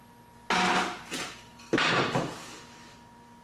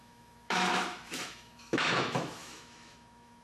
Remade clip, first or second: second